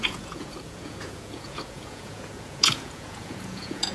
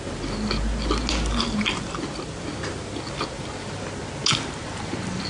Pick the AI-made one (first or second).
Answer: first